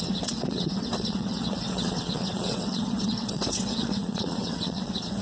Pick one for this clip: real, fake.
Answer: fake